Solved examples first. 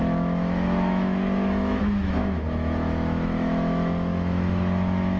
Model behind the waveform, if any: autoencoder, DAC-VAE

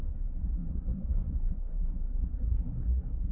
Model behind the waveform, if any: codec, SNAC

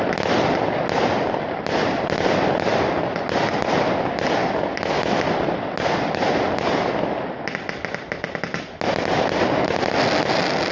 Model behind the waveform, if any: none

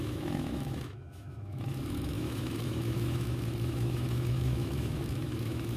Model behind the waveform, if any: autoencoder, DAC-VAE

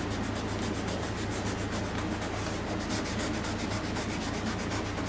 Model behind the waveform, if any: none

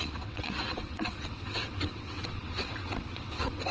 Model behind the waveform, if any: vocoder, WaveNeXt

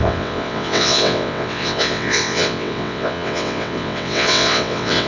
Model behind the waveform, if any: vocoder, WaveNeXt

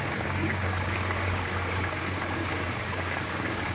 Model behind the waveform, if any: codec, DAC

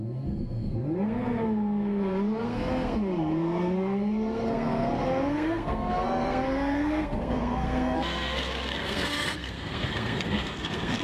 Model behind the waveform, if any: codec, SNAC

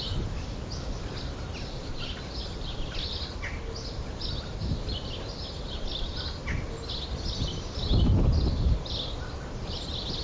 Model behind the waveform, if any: none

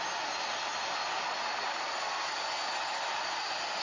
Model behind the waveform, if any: none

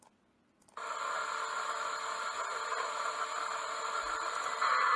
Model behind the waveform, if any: none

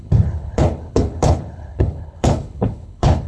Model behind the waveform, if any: codec, HILCodec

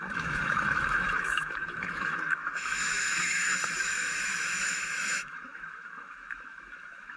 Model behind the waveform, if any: autoencoder, DAC-VAE